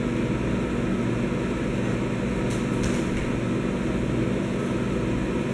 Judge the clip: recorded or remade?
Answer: recorded